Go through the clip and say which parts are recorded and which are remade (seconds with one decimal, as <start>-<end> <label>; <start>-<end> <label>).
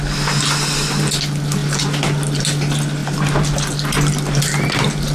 0.0-5.1 recorded